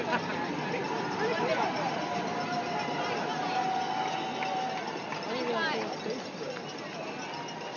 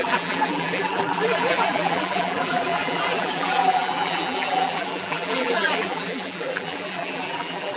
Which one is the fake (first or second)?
second